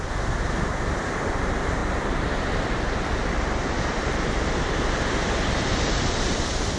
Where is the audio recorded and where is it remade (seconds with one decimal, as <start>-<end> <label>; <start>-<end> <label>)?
0.0-1.8 remade; 1.8-4.3 recorded; 4.3-6.8 remade